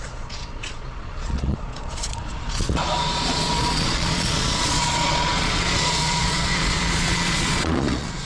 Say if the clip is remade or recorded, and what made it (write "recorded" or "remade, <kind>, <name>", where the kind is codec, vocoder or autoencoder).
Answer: remade, vocoder, Vocos